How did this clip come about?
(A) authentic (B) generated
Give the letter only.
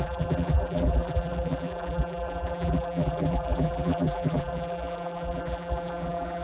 B